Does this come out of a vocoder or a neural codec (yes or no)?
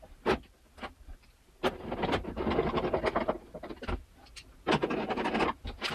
no